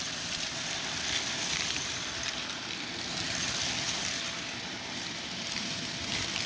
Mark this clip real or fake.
fake